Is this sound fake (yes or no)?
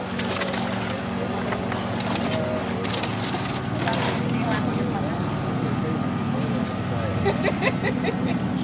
no